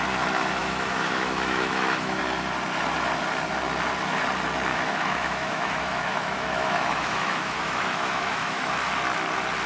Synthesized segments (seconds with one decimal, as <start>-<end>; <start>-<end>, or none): 0.6-2.2; 4.7-8.7

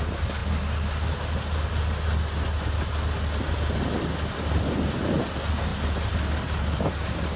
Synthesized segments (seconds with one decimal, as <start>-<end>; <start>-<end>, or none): none

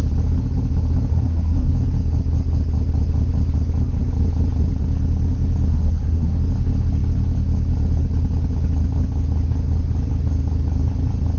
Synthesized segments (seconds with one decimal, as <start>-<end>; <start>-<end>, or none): 1.1-1.7; 5.7-6.4

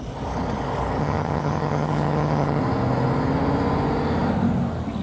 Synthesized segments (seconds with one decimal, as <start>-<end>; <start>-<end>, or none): 1.0-2.6

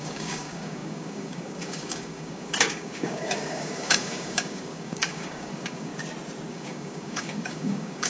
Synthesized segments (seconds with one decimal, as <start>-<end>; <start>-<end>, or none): 0.0-5.9; 6.5-8.1

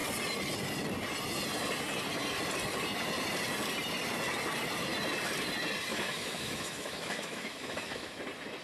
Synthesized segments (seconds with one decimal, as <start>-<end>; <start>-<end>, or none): 5.9-8.2

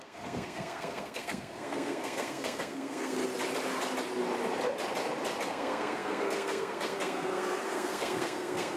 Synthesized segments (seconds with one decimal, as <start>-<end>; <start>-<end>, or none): 0.0-3.2; 5.5-8.8

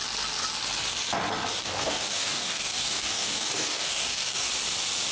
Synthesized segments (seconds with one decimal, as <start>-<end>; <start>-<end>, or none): 1.5-4.5